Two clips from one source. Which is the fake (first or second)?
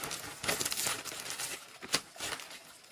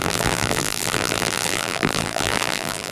second